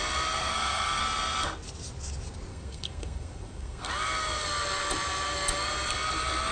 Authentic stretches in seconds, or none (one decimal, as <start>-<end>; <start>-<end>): 0.0-0.4; 1.0-2.5; 3.9-6.5